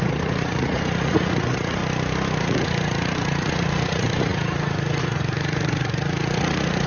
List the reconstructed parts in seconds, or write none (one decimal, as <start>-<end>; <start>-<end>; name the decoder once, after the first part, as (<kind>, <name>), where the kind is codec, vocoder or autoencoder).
0.0-1.8 (vocoder, Vocos); 2.4-6.9